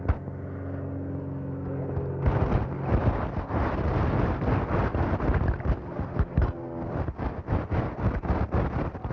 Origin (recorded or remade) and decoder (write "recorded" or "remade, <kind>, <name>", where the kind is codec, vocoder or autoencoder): recorded